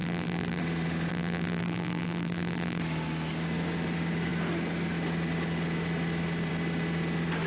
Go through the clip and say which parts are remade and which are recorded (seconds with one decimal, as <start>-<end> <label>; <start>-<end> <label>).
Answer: 0.0-0.6 remade; 0.6-1.1 recorded; 1.1-2.8 remade; 2.8-7.5 recorded